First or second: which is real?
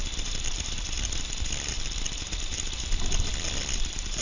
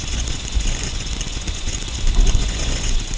first